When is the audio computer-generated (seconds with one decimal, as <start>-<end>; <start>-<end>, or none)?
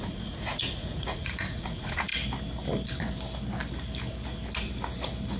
0.0-2.1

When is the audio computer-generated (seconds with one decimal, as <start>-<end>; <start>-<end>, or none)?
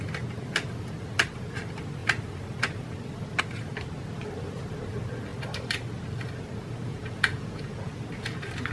6.9-8.0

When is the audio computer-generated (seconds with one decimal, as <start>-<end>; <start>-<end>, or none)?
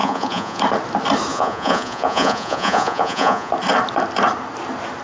0.0-0.6; 1.3-3.5